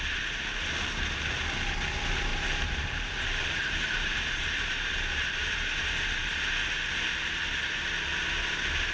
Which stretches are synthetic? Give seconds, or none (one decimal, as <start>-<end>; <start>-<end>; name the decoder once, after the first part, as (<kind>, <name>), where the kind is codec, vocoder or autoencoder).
2.3-6.4 (vocoder, BigVGAN v2)